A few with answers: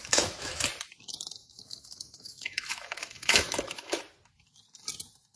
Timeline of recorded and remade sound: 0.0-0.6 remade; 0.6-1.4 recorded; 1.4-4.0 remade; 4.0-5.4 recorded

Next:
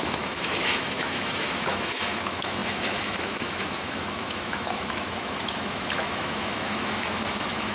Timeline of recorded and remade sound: 0.0-7.7 remade

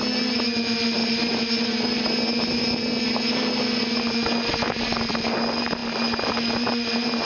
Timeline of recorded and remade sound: 0.0-7.2 recorded

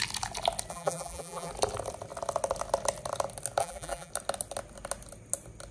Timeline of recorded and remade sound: 0.0-0.7 recorded; 0.7-1.5 remade; 1.5-3.6 recorded; 3.6-4.1 remade; 4.1-5.7 recorded

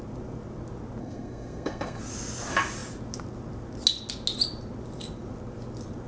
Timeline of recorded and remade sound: 0.0-1.0 recorded; 1.0-2.0 remade; 2.0-6.1 recorded

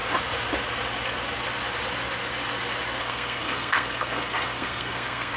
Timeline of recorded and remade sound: 0.0-3.0 recorded; 3.0-5.4 remade

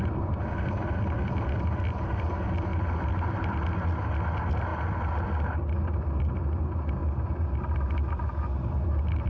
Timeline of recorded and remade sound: 0.0-2.7 recorded; 2.7-3.6 remade; 3.6-9.3 recorded

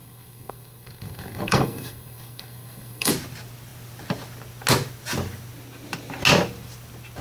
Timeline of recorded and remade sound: 0.0-3.1 remade; 3.1-7.2 recorded